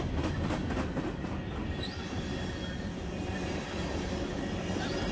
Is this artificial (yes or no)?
no